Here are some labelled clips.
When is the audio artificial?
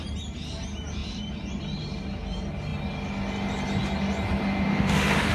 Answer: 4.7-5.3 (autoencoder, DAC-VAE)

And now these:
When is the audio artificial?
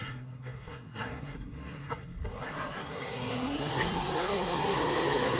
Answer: 0.0-5.4 (codec, SNAC)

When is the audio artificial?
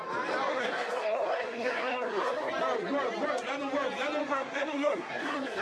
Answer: 0.5-2.5 (codec, SNAC); 4.2-5.6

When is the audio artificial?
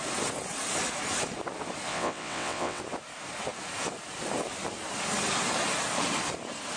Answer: 1.9-2.8 (vocoder, WaveNeXt)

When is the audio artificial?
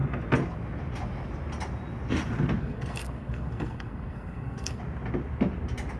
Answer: 2.6-4.8 (codec, SNAC)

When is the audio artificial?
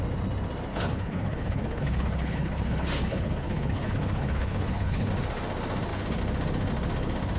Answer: 0.7-5.1 (codec, HILCodec)